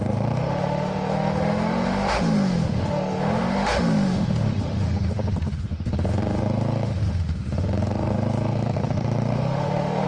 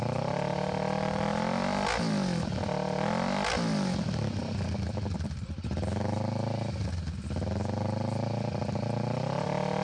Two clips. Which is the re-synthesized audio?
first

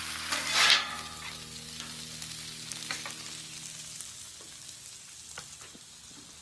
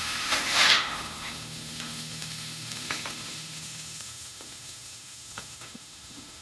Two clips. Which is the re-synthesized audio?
second